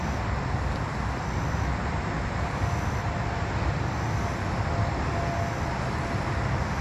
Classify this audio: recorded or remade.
recorded